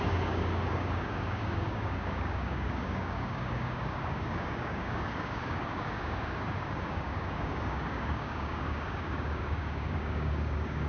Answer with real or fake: fake